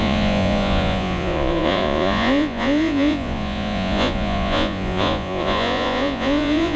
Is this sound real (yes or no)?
no